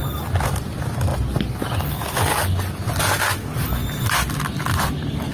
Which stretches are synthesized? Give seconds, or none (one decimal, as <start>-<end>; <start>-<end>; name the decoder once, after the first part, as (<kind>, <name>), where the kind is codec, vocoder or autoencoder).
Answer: none